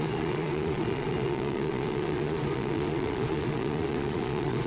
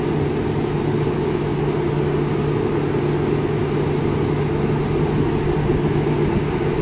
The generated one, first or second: first